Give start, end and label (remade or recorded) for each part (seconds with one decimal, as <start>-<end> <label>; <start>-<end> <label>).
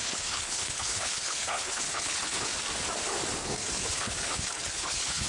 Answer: 0.0-2.5 remade; 2.5-3.4 recorded; 3.4-5.3 remade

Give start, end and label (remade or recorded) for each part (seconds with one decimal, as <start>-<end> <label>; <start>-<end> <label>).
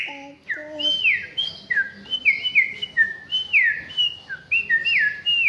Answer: 0.0-5.5 recorded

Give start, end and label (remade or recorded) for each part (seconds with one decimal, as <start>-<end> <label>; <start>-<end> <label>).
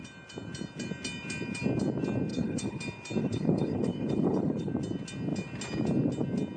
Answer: 0.0-2.3 recorded; 2.3-2.8 remade; 2.8-3.2 recorded; 3.2-4.7 remade; 4.7-6.6 recorded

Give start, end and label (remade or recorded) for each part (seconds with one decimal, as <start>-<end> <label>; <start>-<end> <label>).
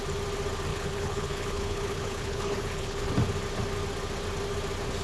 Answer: 0.0-0.7 recorded; 0.7-3.1 remade; 3.1-5.0 recorded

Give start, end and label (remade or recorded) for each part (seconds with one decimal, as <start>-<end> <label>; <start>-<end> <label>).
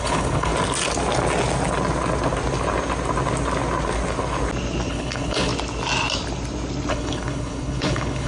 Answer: 0.0-0.5 remade; 0.5-4.9 recorded; 4.9-5.5 remade; 5.5-6.9 recorded; 6.9-8.3 remade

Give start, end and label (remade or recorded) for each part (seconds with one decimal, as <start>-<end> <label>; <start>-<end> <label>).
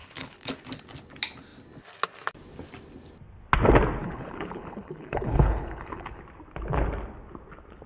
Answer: 0.0-0.6 remade; 0.6-4.0 recorded; 4.0-6.2 remade; 6.2-7.9 recorded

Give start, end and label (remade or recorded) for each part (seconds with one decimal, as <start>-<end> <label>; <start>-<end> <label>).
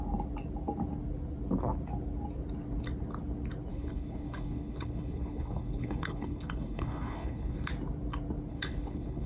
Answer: 0.0-3.7 recorded; 3.7-7.7 remade; 7.7-8.5 recorded; 8.5-9.3 remade